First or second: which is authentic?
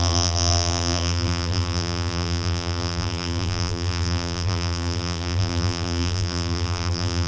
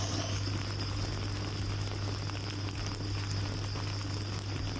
second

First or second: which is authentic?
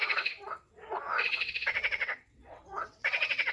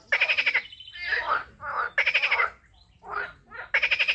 second